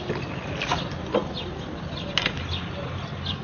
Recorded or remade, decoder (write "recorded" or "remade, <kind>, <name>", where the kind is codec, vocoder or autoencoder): recorded